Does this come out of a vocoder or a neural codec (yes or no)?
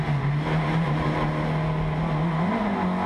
no